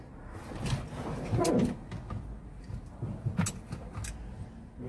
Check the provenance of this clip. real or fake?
real